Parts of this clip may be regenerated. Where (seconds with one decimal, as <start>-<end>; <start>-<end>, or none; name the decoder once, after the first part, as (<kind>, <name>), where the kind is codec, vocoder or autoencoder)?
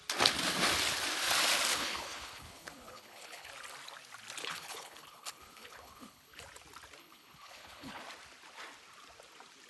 1.7-3.5 (codec, HILCodec); 4.4-6.4; 7.0-8.0